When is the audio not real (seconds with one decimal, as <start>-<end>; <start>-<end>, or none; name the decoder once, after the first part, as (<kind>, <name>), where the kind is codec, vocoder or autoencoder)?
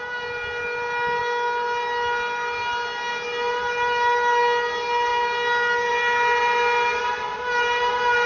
none